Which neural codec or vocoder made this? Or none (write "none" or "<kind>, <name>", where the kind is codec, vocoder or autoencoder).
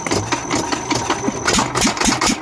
none